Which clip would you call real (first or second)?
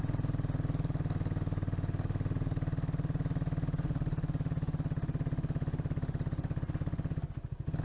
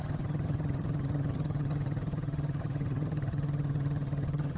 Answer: first